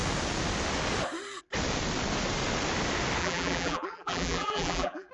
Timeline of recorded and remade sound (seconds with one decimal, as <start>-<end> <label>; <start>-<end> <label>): 0.0-3.2 recorded; 3.2-5.1 remade